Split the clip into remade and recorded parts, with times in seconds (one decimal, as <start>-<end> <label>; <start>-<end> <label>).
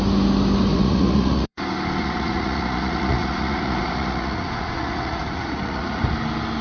0.0-0.7 recorded; 0.7-1.6 remade; 1.6-2.0 recorded; 2.0-6.0 remade; 6.0-6.6 recorded